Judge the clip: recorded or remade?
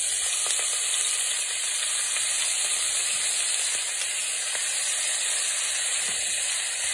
recorded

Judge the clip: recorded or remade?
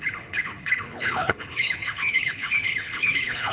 remade